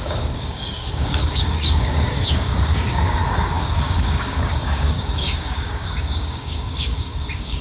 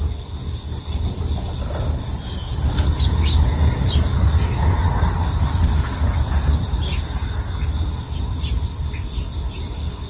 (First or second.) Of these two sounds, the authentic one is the second